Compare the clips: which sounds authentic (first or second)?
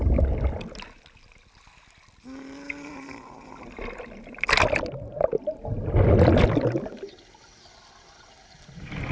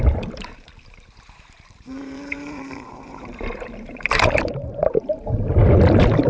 first